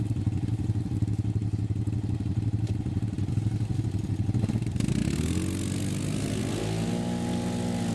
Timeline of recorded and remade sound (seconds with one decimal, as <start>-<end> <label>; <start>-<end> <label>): 0.0-7.9 recorded